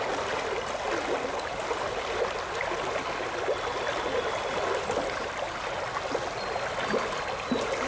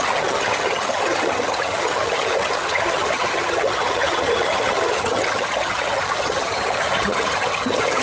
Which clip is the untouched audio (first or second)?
first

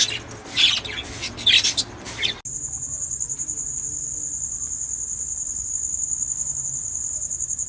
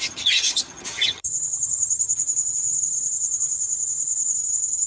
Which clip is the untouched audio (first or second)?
first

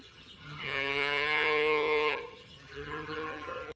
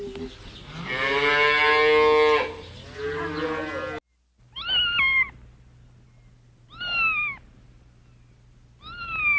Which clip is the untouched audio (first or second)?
second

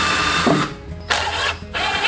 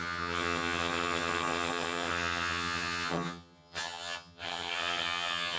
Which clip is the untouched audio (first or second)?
first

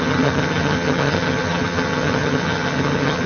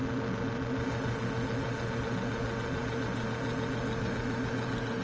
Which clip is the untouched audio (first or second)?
second